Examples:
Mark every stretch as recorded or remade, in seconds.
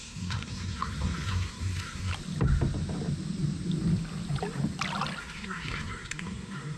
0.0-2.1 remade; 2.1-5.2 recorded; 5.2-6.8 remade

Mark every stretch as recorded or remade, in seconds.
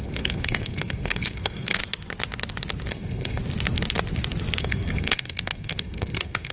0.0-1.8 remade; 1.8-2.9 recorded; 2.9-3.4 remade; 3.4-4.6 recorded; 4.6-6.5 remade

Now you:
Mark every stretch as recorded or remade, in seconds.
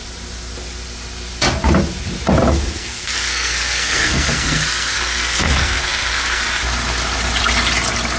0.0-2.5 recorded; 2.5-6.4 remade; 6.4-8.2 recorded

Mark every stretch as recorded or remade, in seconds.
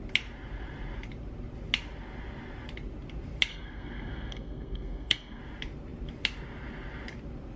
0.0-3.5 recorded; 3.5-5.4 remade; 5.4-7.6 recorded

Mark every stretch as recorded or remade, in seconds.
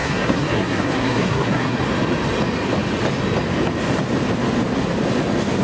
0.0-1.8 remade; 1.8-5.6 recorded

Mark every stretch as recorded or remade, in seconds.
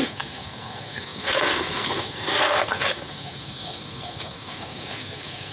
0.0-5.5 remade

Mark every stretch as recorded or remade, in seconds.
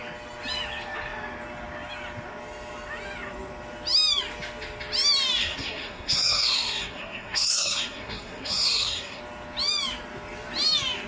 0.0-5.4 recorded; 5.4-9.2 remade; 9.2-11.1 recorded